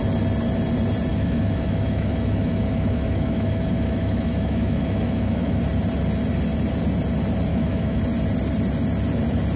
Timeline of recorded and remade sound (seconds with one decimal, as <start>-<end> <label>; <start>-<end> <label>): 0.0-1.1 recorded; 1.1-5.6 remade; 5.6-7.5 recorded; 7.5-8.0 remade; 8.0-9.6 recorded